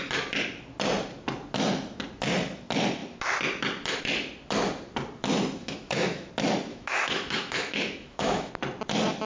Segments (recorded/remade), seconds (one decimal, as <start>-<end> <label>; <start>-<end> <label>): 0.0-5.6 recorded; 5.6-6.3 remade; 6.3-6.7 recorded; 6.7-8.5 remade; 8.5-9.3 recorded